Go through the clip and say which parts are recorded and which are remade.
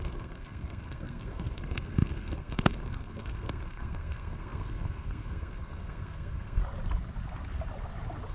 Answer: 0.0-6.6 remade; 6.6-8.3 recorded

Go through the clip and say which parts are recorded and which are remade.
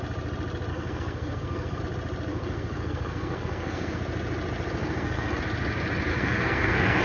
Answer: 0.0-0.7 recorded; 0.7-1.8 remade; 1.8-2.3 recorded; 2.3-4.0 remade; 4.0-4.8 recorded; 4.8-5.4 remade; 5.4-6.1 recorded; 6.1-7.0 remade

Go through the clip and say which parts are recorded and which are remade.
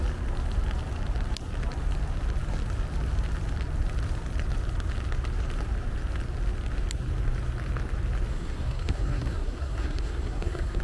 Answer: 0.0-8.3 recorded; 8.3-10.8 remade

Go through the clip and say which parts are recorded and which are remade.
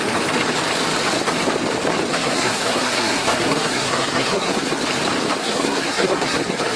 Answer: 0.0-2.1 recorded; 2.1-4.8 remade; 4.8-5.4 recorded; 5.4-6.8 remade